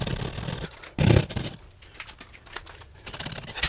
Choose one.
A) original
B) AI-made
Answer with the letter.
A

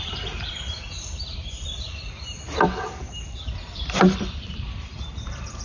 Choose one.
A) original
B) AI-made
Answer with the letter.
B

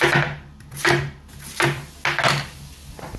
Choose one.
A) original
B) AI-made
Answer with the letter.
A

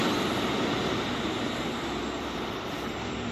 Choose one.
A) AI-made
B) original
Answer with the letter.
A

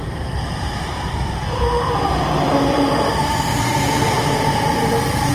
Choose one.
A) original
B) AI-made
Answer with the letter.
B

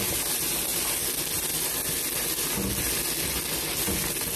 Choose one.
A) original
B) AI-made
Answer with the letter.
A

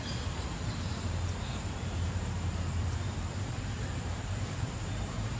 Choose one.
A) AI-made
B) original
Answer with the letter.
A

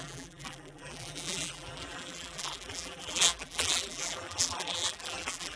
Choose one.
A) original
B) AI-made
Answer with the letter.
B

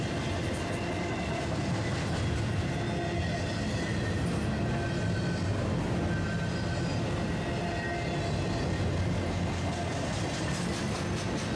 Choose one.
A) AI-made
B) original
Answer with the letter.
B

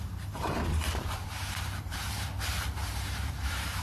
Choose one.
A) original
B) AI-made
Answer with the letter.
B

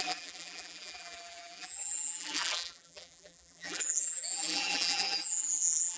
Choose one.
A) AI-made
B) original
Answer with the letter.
A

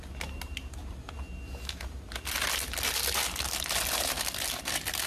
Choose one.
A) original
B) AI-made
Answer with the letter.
A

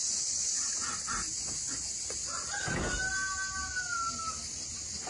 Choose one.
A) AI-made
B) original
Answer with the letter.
B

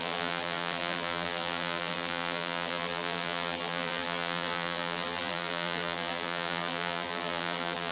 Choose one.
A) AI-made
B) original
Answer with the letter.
A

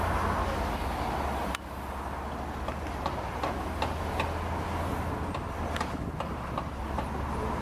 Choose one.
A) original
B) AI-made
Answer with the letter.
A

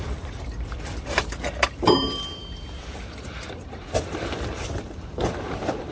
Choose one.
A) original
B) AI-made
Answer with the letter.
B